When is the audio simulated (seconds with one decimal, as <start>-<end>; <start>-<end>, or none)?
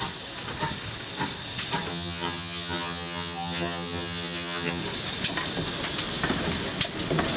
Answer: 1.9-4.8